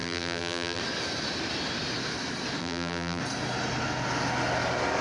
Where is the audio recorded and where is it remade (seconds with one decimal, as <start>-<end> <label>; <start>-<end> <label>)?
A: 0.0-0.8 remade; 0.8-2.6 recorded; 2.6-3.2 remade; 3.2-5.0 recorded